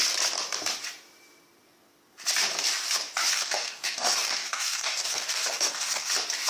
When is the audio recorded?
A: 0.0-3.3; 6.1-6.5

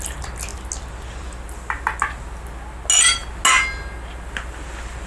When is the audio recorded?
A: 0.0-5.1

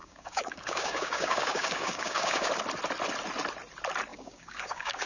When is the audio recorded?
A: 2.5-4.1

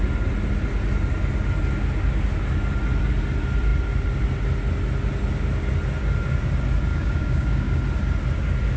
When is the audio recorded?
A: 0.0-6.9; 7.8-8.8